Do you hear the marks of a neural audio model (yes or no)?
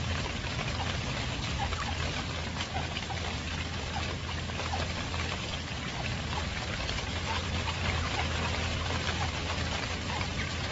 yes